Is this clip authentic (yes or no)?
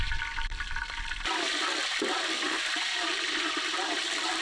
no